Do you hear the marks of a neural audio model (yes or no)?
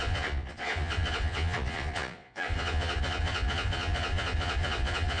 yes